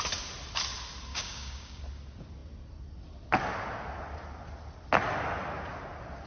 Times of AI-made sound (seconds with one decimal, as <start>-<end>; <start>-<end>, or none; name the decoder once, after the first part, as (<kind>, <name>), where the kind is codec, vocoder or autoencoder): 1.1-1.8 (codec, DAC)